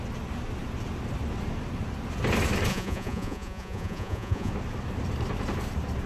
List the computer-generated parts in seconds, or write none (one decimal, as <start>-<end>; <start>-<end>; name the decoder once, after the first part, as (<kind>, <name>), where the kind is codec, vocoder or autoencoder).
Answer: 2.7-4.5 (vocoder, Vocos)